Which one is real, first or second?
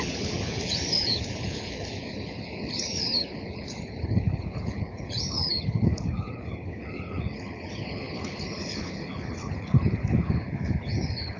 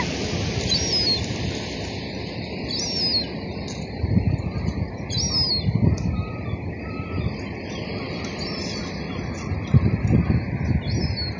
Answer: second